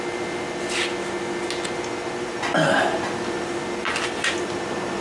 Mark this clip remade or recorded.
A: recorded